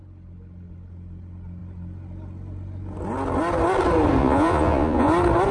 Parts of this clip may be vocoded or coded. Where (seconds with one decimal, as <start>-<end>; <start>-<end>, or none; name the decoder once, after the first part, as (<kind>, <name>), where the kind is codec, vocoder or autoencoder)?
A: 4.2-5.1 (vocoder, Vocos)